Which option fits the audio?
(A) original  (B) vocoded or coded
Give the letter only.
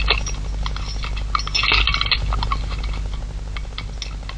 A